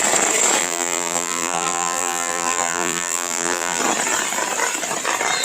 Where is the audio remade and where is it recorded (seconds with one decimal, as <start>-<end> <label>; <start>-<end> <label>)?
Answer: 0.0-0.6 recorded; 0.6-3.8 remade; 3.8-5.4 recorded